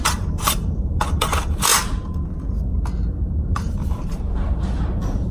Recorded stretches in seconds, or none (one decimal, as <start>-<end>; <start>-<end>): 1.7-3.5